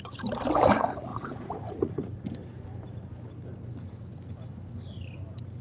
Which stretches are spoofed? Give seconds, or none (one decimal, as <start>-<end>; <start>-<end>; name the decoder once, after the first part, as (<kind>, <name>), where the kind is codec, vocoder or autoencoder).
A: 1.1-2.1 (vocoder, Vocos)